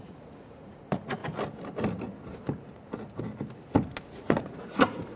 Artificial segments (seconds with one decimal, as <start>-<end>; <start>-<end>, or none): 0.0-1.2; 4.2-5.2